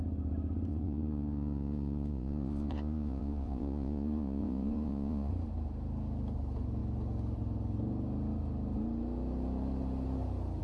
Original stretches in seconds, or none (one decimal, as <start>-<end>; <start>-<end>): 0.0-0.7; 5.3-10.6